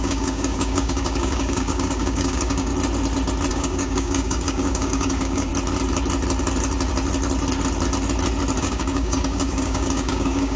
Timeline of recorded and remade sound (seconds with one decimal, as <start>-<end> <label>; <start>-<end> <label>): 0.0-2.7 remade; 2.7-3.5 recorded; 3.5-5.5 remade; 5.5-8.6 recorded; 8.6-10.6 remade